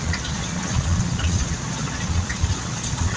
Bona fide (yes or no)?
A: no